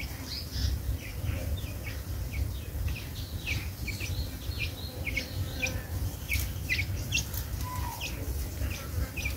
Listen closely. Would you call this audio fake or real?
real